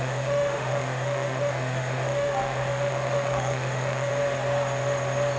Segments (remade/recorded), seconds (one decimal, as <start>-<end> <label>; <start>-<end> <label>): 0.0-4.1 remade; 4.1-5.4 recorded